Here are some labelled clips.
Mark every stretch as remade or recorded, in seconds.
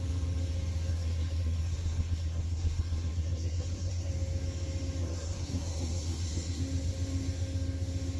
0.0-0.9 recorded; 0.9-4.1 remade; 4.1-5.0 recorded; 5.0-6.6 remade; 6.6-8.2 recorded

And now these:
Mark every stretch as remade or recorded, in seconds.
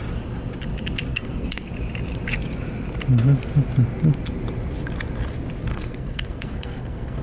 0.0-1.1 recorded; 1.1-1.7 remade; 1.7-5.7 recorded; 5.7-7.2 remade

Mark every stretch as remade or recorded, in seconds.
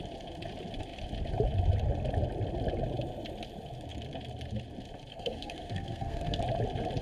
0.0-5.1 recorded; 5.1-6.4 remade; 6.4-7.0 recorded